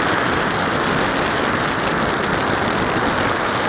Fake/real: real